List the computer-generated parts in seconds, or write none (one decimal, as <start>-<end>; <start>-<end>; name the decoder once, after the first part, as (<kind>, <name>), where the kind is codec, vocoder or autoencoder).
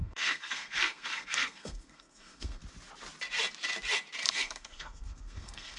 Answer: 0.0-2.6 (codec, SNAC); 4.3-5.8